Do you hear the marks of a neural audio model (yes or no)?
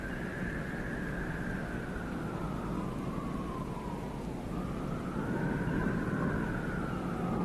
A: no